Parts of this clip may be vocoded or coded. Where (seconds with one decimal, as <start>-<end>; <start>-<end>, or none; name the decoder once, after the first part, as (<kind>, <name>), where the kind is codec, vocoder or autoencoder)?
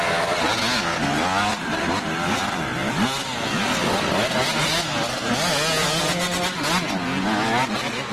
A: none